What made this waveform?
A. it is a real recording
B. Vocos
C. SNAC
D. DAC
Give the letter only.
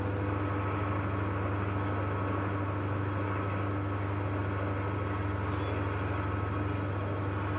A